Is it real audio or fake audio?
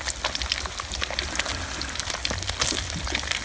real